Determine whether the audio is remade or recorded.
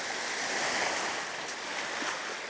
recorded